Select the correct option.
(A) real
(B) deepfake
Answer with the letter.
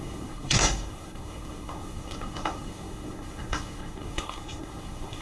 B